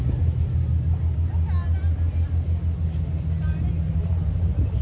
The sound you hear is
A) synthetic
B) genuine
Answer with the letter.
B